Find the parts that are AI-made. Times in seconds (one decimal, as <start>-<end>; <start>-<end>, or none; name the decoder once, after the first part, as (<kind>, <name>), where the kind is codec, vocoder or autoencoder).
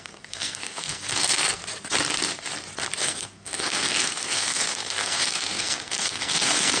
0.0-1.6 (codec, SNAC); 3.0-6.8